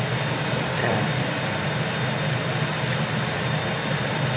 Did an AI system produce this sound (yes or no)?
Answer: no